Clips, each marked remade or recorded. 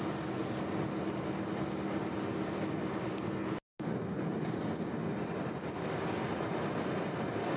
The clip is recorded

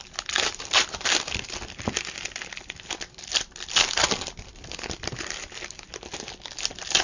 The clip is remade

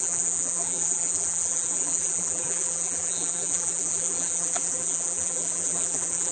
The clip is remade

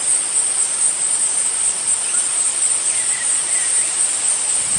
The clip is remade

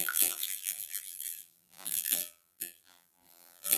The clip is remade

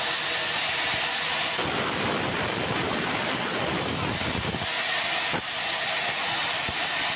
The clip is recorded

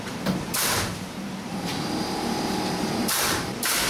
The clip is remade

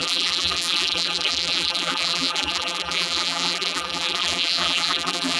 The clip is remade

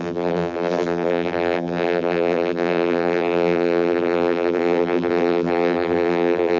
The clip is remade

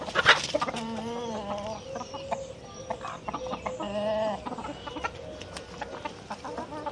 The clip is remade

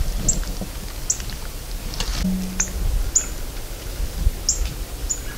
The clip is recorded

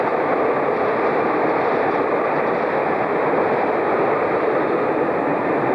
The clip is recorded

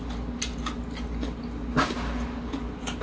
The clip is recorded